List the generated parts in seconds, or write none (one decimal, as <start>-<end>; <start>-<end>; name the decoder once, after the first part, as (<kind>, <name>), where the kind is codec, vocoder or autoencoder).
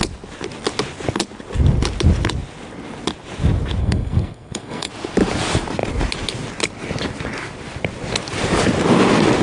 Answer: 3.8-4.9 (codec, SNAC)